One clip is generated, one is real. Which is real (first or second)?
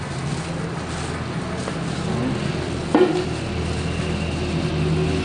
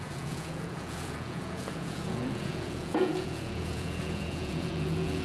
first